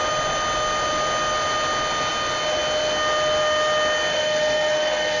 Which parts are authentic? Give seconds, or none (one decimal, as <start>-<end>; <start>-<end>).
0.0-4.1